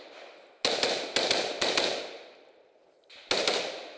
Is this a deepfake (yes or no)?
no